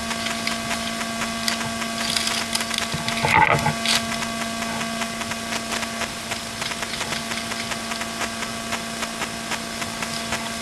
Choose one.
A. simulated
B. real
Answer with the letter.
B